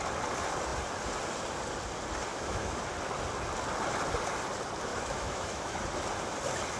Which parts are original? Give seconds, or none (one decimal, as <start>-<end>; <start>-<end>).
0.0-2.3; 2.8-4.9; 5.8-6.8